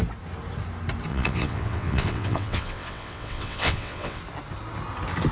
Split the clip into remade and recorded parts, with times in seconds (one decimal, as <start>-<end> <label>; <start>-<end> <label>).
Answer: 0.0-1.1 recorded; 1.1-4.2 remade; 4.2-5.3 recorded